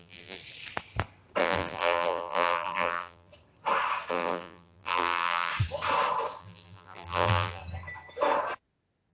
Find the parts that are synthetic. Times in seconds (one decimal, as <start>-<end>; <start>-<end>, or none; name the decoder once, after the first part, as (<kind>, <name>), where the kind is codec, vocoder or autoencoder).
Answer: 0.0-0.4 (vocoder, BigVGAN v2); 1.4-3.3; 4.1-5.5; 6.4-7.6